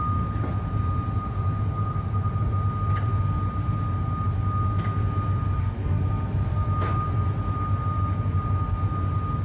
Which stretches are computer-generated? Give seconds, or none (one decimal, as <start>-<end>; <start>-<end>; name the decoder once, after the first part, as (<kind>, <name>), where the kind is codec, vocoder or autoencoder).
5.6-6.1 (codec, DAC)